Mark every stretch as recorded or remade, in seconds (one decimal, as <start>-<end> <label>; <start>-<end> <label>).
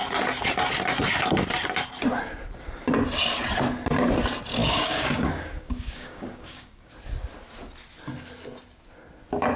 0.0-4.6 recorded; 4.6-6.9 remade; 6.9-9.6 recorded